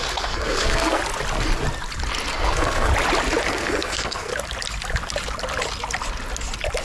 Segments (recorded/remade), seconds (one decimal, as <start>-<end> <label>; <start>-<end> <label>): 0.0-1.0 remade; 1.0-2.3 recorded; 2.3-2.9 remade; 2.9-3.5 recorded; 3.5-4.3 remade; 4.3-6.8 recorded